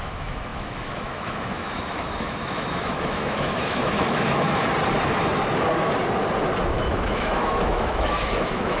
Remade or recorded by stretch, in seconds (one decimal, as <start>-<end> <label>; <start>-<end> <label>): 0.0-4.6 remade; 4.6-6.6 recorded; 6.6-8.8 remade

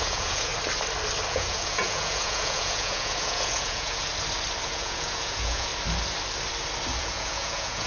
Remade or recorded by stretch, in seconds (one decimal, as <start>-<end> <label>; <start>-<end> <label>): 0.0-0.5 remade; 0.5-1.3 recorded; 1.3-4.1 remade; 4.1-4.6 recorded; 4.6-5.7 remade; 5.7-7.0 recorded; 7.0-7.9 remade

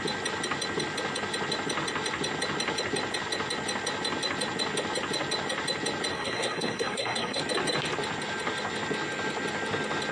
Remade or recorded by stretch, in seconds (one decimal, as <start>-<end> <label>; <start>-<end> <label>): 0.0-6.1 recorded; 6.1-7.4 remade; 7.4-10.1 recorded

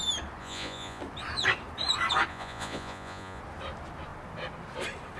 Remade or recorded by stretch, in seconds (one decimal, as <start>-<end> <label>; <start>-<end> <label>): 0.0-0.4 recorded; 0.4-1.0 remade; 1.0-2.3 recorded; 2.3-3.4 remade; 3.4-5.2 recorded

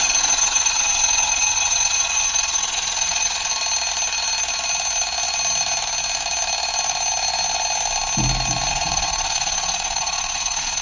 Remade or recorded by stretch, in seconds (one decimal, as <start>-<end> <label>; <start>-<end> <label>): 0.0-3.5 remade; 3.5-8.7 recorded; 8.7-10.8 remade